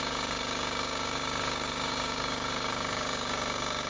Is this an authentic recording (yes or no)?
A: no